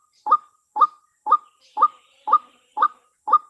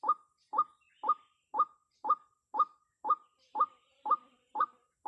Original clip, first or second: second